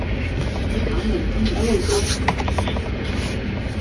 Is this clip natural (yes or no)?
yes